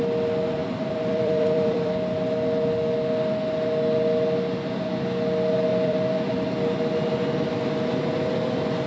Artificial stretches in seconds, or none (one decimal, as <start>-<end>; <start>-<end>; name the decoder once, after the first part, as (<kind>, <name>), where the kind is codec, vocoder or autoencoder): 0.6-1.9 (vocoder, BigVGAN v2); 5.7-6.3